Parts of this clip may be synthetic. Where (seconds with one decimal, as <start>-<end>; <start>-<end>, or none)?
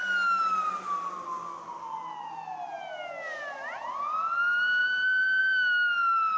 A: none